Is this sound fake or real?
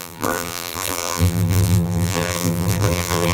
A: fake